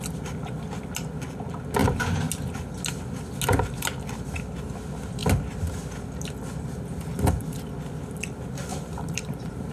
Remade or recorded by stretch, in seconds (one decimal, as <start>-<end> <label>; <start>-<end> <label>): 0.0-8.7 recorded; 8.7-9.7 remade